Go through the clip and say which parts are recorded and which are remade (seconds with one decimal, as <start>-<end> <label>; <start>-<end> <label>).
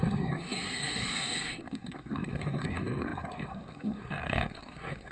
0.0-5.1 remade